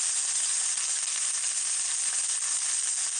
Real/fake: real